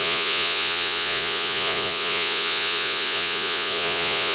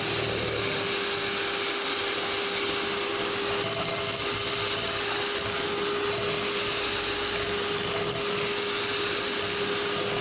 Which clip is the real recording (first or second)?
second